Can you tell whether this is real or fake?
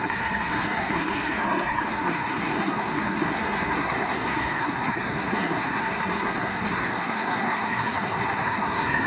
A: fake